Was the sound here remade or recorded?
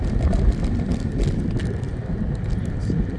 recorded